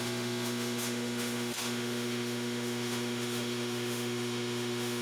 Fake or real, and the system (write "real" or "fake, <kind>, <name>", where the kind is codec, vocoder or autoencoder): fake, autoencoder, DAC-VAE